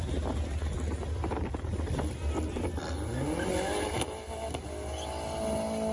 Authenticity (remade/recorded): recorded